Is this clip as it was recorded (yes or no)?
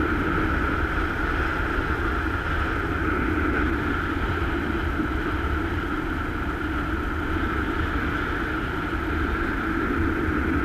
yes